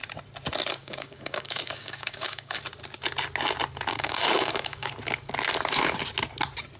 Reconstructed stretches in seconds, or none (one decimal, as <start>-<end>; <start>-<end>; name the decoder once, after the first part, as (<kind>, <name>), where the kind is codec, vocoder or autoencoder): 0.8-2.6 (codec, DAC); 3.9-4.9